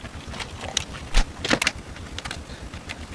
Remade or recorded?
recorded